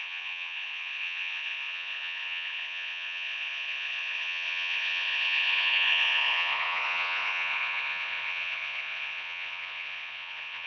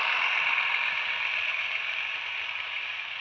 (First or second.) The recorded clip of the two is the second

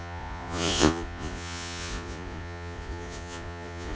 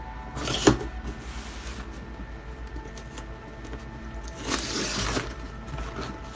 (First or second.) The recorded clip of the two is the second